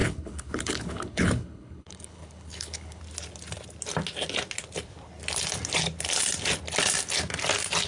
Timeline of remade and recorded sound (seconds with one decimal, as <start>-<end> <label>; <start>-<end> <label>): 0.0-3.0 remade; 3.0-7.9 recorded